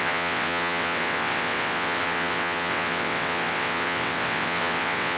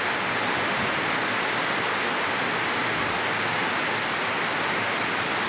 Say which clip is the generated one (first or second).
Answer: first